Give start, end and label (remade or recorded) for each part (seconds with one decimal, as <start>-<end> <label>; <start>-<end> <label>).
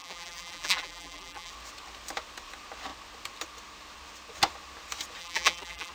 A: 0.0-1.5 remade; 1.5-5.2 recorded; 5.2-5.9 remade